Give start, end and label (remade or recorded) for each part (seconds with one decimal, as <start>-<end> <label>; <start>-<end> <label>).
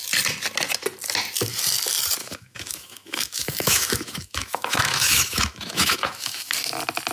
0.0-2.2 recorded; 2.2-6.5 remade; 6.5-7.1 recorded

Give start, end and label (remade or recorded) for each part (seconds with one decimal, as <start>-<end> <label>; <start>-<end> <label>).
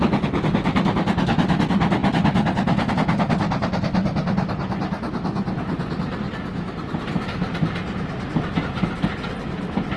0.0-10.0 recorded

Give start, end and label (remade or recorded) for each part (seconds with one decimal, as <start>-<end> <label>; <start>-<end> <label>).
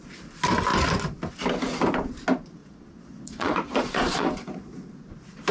0.0-2.6 recorded; 2.6-4.7 remade; 4.7-5.5 recorded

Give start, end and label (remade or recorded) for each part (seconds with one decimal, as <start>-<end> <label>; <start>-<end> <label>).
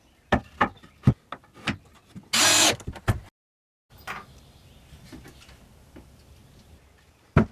0.0-7.5 recorded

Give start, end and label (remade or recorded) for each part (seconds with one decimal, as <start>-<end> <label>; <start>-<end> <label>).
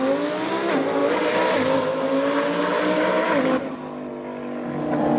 0.0-5.2 recorded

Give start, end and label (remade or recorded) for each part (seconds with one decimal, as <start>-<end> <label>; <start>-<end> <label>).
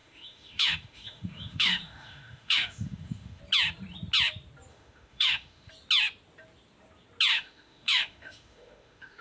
0.0-3.4 remade; 3.4-4.7 recorded; 4.7-5.7 remade; 5.7-7.3 recorded; 7.3-9.2 remade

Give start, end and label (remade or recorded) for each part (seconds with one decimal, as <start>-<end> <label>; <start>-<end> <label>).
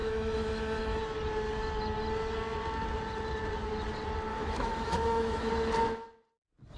0.0-1.0 remade; 1.0-4.3 recorded; 4.3-5.5 remade; 5.5-6.8 recorded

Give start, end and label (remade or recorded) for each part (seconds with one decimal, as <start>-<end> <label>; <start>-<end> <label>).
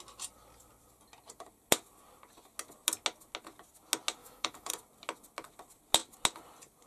0.0-4.2 recorded; 4.2-4.7 remade; 4.7-6.9 recorded